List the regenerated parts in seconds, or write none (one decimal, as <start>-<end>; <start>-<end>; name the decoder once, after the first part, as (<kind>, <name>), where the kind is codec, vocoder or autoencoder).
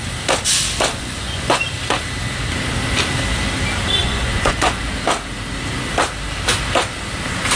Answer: 0.9-1.6 (vocoder, Vocos); 4.0-4.8